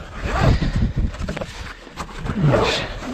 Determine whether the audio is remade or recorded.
recorded